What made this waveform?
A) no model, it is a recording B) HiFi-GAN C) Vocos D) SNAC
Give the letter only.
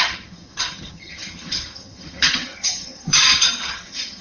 B